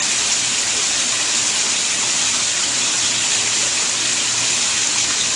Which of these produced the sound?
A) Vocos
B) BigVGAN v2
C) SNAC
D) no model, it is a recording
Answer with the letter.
D